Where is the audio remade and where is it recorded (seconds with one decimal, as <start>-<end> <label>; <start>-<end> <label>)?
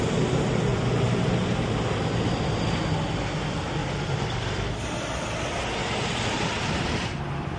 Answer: 0.0-0.7 recorded; 0.7-1.6 remade; 1.6-3.8 recorded; 3.8-7.6 remade